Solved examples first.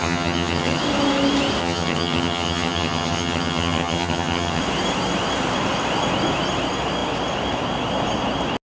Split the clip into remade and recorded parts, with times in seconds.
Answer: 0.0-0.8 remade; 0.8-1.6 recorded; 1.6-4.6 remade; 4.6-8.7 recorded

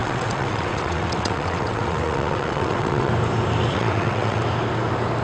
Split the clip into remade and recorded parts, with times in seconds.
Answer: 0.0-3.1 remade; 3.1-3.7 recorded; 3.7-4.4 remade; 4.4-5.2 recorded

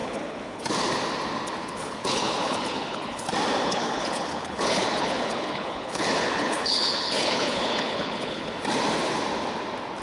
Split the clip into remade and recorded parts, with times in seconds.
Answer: 0.0-0.6 remade; 0.6-1.6 recorded; 1.6-3.2 remade; 3.2-3.6 recorded; 3.6-8.5 remade; 8.5-10.0 recorded

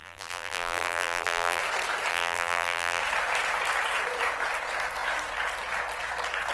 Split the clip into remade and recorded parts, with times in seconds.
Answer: 0.0-1.6 remade; 1.6-2.1 recorded; 2.1-3.0 remade; 3.0-6.5 recorded